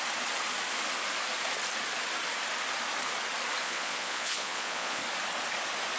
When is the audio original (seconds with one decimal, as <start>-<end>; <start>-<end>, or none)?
0.0-3.6; 5.0-6.0